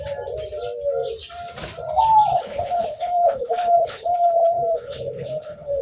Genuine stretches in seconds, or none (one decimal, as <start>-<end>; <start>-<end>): 0.0-2.3